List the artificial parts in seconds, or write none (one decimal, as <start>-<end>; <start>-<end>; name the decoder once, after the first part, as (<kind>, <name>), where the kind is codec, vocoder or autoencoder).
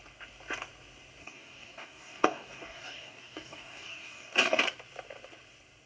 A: 1.2-4.6 (codec, DAC)